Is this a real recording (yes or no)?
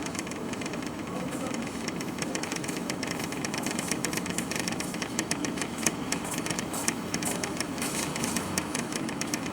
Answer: no